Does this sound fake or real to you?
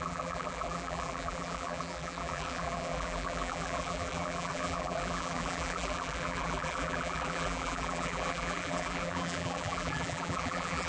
fake